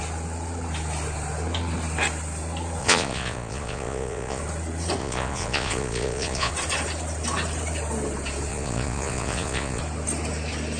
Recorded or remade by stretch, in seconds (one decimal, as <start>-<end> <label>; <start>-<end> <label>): 0.0-2.8 recorded; 2.8-4.4 remade; 4.4-5.0 recorded; 5.0-6.5 remade; 6.5-8.5 recorded; 8.5-9.8 remade; 9.8-10.8 recorded